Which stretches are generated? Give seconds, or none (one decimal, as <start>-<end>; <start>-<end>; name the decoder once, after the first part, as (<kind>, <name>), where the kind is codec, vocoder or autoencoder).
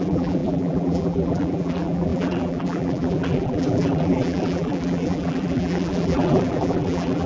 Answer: 0.0-7.3 (vocoder, BigVGAN v2)